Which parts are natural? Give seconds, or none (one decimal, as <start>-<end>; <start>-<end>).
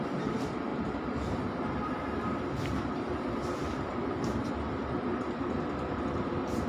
none